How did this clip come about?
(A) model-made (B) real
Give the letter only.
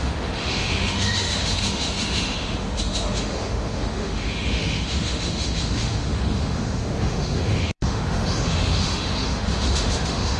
A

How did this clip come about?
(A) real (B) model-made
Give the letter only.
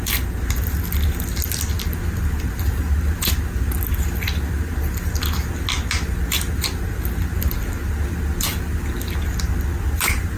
A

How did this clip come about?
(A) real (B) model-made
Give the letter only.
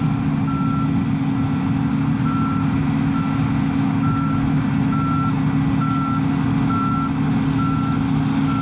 A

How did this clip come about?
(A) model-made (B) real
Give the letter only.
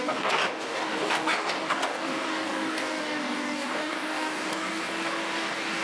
A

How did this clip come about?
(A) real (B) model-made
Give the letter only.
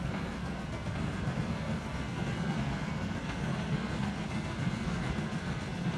B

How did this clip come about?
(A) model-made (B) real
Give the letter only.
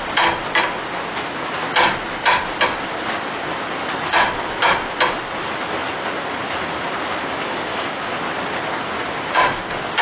B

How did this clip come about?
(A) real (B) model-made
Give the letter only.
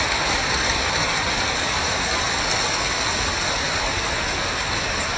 A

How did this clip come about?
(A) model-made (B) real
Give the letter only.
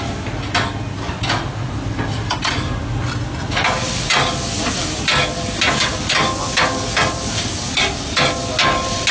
B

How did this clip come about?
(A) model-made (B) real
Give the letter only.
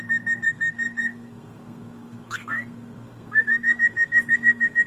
A